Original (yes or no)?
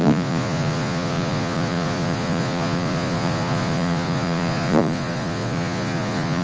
no